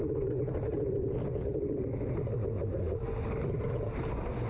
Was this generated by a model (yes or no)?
no